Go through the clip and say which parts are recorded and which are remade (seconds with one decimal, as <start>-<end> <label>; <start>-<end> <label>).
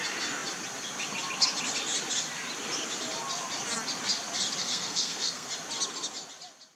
0.0-4.6 recorded; 4.6-5.5 remade; 5.5-6.8 recorded